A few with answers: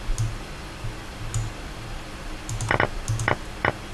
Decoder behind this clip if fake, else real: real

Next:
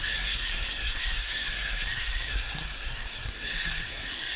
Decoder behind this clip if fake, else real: fake, codec, SNAC